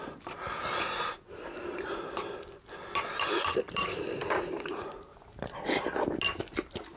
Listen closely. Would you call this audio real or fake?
real